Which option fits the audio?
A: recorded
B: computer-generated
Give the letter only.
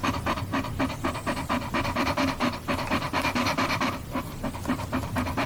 A